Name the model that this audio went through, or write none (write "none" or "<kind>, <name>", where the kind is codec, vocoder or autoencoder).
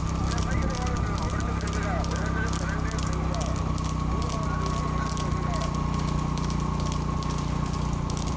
none